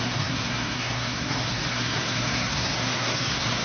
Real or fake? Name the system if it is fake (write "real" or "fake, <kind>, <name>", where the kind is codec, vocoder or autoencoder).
fake, codec, SNAC